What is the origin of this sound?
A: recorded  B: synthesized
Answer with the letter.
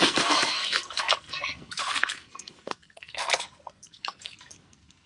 B